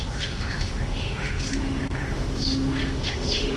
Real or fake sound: fake